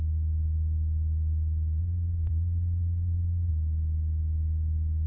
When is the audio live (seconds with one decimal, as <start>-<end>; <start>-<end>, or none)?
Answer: 0.0-1.8; 3.5-5.1